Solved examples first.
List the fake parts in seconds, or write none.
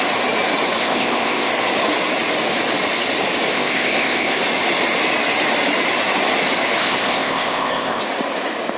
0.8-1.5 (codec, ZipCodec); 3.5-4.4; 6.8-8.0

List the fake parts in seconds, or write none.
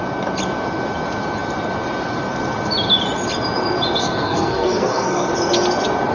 4.0-5.3 (codec, SNAC)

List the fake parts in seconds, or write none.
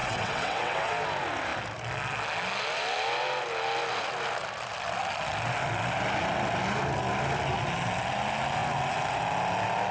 0.0-0.9 (vocoder, WaveNeXt)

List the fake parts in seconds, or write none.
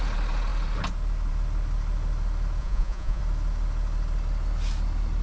2.6-3.2 (vocoder, Vocos)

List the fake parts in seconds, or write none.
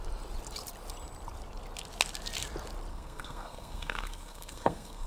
2.9-5.1 (codec, SNAC)